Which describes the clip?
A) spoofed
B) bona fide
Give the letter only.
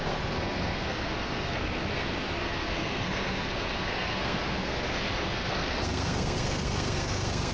A